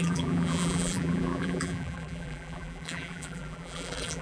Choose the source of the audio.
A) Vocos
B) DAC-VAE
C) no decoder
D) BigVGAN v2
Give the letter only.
D